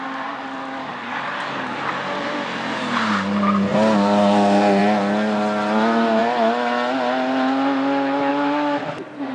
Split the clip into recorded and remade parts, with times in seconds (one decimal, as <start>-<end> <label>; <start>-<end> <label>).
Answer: 0.0-0.8 recorded; 0.8-1.8 remade; 1.8-9.3 recorded

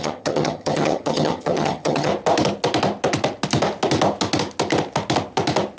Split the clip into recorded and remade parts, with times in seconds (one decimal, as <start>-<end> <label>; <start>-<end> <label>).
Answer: 0.0-2.1 remade; 2.1-5.8 recorded

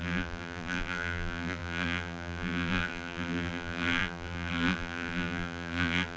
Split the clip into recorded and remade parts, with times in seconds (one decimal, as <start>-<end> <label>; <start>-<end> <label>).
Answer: 0.0-6.2 remade

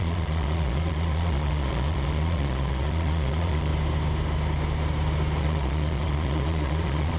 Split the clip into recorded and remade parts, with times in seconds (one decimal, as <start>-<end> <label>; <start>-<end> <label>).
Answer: 0.0-3.7 remade; 3.7-5.4 recorded; 5.4-7.2 remade

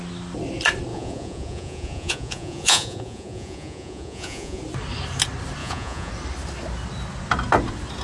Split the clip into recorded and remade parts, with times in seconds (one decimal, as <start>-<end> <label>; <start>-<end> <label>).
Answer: 0.0-0.9 recorded; 0.9-4.6 remade; 4.6-5.6 recorded; 5.6-6.1 remade; 6.1-8.0 recorded

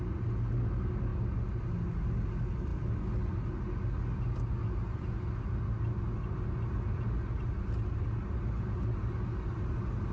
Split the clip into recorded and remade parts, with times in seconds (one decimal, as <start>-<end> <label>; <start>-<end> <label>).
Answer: 0.0-10.1 recorded